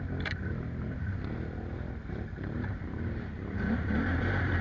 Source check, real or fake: fake